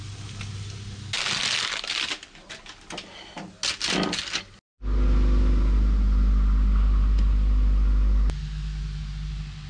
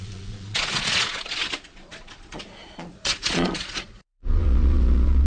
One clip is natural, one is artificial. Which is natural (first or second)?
first